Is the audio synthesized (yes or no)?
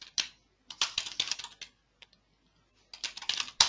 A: no